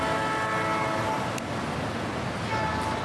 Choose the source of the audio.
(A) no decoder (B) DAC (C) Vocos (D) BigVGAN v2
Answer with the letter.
A